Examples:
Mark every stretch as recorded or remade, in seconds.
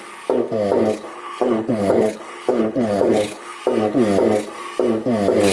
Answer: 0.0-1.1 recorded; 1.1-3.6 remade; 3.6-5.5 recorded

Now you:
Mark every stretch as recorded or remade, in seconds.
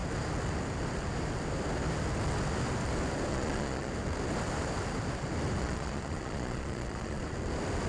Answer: 0.0-3.3 recorded; 3.3-3.9 remade; 3.9-5.6 recorded; 5.6-7.2 remade; 7.2-7.9 recorded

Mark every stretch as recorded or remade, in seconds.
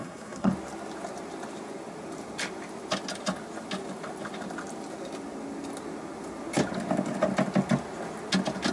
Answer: 0.0-0.5 remade; 0.5-8.7 recorded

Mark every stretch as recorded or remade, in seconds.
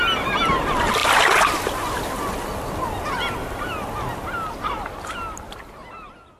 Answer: 0.0-6.4 recorded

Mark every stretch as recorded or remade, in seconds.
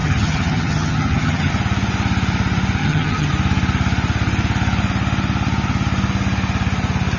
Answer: 0.0-1.5 remade; 1.5-2.8 recorded; 2.8-3.3 remade; 3.3-7.2 recorded